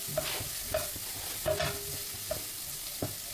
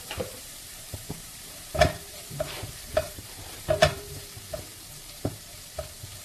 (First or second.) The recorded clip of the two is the first